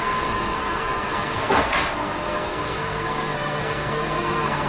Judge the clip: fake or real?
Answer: fake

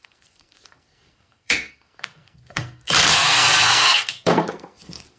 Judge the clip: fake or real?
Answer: fake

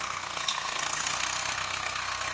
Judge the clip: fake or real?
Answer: fake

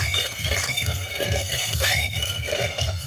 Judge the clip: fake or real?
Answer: fake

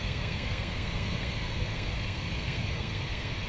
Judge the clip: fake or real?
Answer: fake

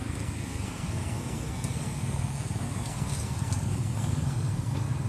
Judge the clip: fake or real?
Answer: fake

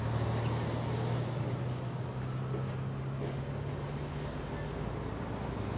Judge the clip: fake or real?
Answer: real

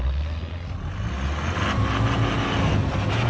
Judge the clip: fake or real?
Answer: real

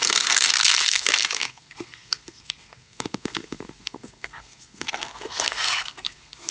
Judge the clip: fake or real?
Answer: fake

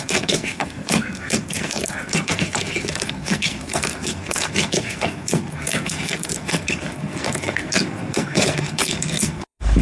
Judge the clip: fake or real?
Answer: fake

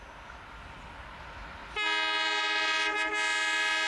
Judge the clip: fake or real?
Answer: real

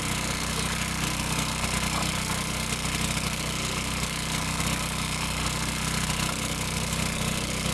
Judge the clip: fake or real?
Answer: fake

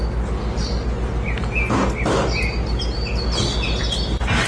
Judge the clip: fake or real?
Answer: real